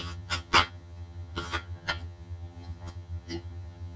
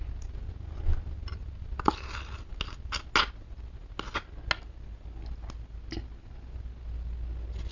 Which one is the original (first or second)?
second